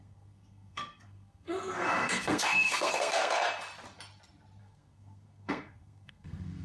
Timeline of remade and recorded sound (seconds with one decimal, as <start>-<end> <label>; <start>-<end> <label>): 0.0-3.4 remade; 3.4-4.6 recorded; 4.6-6.6 remade